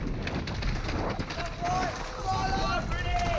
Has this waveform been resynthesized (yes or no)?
no